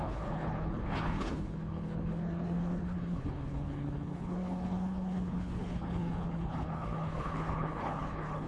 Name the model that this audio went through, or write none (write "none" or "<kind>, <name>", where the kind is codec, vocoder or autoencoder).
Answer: codec, HILCodec